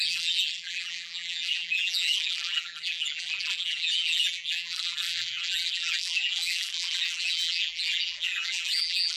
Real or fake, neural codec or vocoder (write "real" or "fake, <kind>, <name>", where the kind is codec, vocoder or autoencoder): fake, vocoder, BigVGAN v2